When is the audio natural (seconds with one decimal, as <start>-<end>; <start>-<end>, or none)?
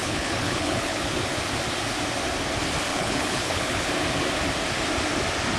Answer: 1.2-2.9; 3.9-5.6